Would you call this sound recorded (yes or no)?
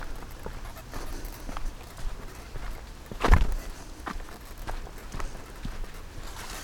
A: yes